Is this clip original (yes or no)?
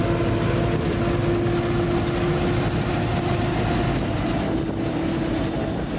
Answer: yes